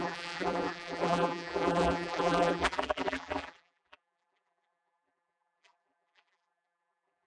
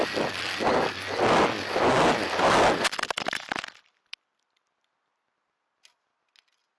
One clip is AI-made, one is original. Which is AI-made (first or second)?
first